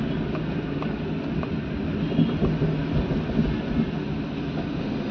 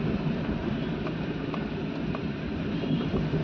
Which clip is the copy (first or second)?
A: second